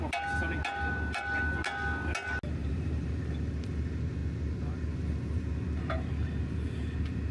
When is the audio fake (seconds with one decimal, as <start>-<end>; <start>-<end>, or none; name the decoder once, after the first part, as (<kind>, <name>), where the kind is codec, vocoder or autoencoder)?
2.6-3.2 (vocoder, BigVGAN v2)